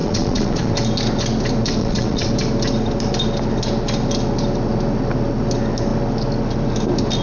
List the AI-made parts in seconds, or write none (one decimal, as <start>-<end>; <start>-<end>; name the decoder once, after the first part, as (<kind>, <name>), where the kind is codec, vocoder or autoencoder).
0.0-0.7 (vocoder, Vocos); 1.8-2.3